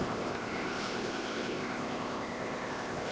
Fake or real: fake